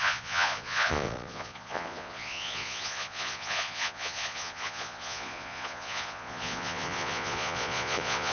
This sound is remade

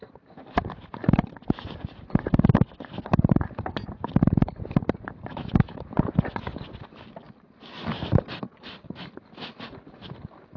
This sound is recorded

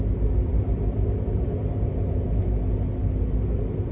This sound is remade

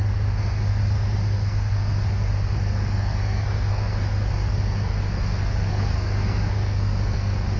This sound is remade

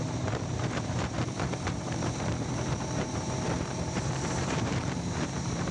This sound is remade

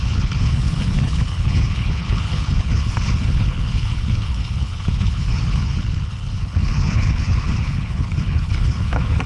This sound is remade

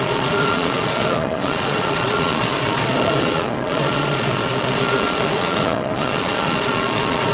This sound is remade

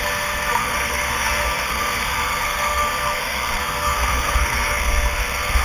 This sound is remade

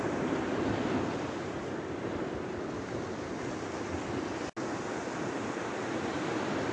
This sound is recorded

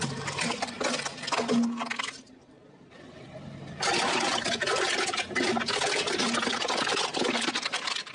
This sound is remade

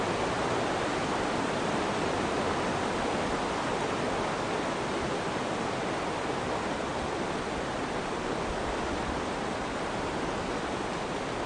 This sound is recorded